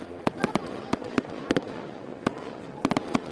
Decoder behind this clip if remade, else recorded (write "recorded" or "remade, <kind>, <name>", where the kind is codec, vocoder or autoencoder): remade, vocoder, Vocos